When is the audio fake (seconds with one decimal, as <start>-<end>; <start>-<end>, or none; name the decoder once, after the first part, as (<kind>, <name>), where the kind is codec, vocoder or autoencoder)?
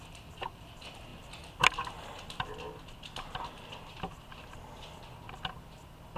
0.0-1.1 (vocoder, BigVGAN v2); 3.9-4.3